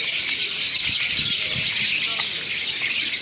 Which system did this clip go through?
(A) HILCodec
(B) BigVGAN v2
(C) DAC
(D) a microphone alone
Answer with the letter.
D